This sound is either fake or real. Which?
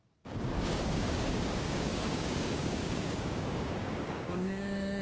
fake